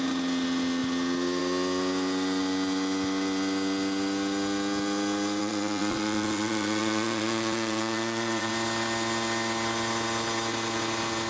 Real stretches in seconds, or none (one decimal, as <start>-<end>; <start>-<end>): 0.0-5.4; 8.5-11.3